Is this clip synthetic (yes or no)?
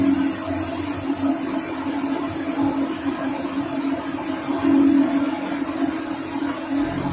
no